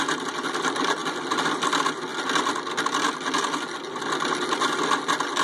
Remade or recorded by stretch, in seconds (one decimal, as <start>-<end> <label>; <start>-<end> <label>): 0.0-5.4 recorded